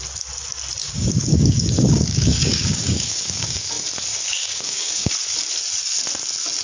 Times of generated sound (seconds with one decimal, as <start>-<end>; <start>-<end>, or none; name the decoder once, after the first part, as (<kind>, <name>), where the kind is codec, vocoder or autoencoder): 0.8-3.7 (codec, DAC); 4.4-5.1